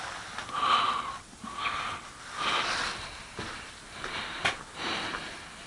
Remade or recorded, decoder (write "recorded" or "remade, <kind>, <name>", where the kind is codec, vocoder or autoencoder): recorded